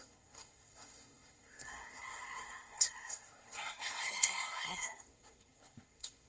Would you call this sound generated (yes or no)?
yes